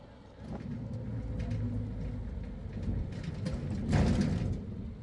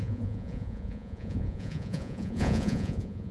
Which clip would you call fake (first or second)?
second